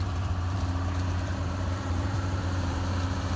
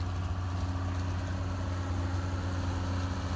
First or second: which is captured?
second